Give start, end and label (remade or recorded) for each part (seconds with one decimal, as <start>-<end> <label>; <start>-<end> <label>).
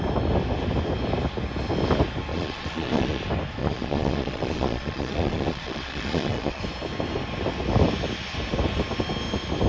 0.0-2.3 recorded; 2.3-3.2 remade; 3.2-3.6 recorded; 3.6-6.6 remade; 6.6-9.7 recorded